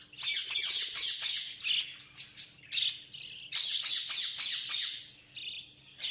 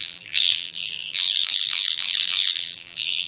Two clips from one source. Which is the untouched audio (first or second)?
first